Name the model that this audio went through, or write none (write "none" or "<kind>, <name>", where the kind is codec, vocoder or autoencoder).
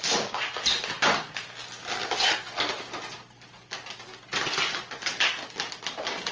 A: none